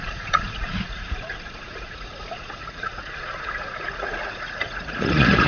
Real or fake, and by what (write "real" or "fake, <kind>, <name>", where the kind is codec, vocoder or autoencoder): fake, vocoder, Vocos